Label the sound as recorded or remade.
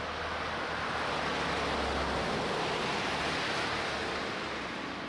recorded